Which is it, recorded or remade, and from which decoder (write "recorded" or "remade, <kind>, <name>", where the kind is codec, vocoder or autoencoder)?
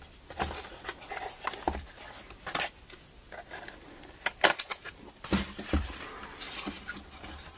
recorded